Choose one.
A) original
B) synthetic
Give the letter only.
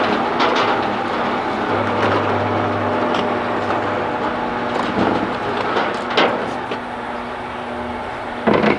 A